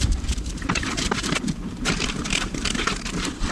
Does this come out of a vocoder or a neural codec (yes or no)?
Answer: yes